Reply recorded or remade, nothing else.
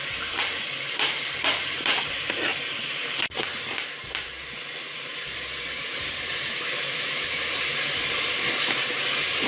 remade